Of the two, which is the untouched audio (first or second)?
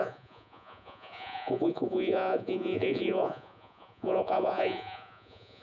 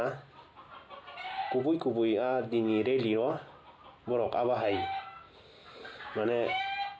second